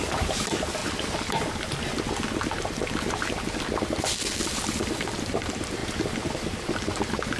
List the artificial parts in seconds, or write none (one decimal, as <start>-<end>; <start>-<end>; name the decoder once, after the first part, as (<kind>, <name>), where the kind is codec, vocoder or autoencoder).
0.0-0.8 (vocoder, BigVGAN v2); 5.2-5.8; 6.3-7.4